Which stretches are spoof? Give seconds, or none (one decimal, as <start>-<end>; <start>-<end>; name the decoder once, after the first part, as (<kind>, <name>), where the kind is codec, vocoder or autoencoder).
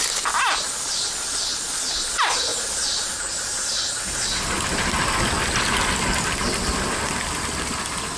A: none